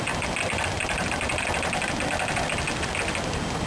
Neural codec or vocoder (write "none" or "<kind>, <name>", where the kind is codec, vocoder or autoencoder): none